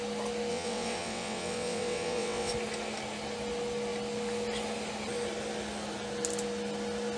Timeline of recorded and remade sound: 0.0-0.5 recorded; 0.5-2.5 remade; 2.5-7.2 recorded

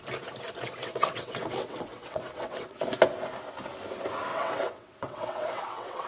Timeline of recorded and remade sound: 0.0-0.8 recorded; 0.8-2.8 remade; 2.8-4.3 recorded; 4.3-6.1 remade